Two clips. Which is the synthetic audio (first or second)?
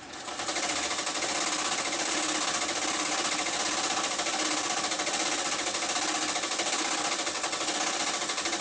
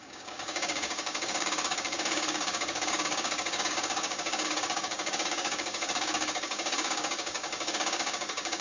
second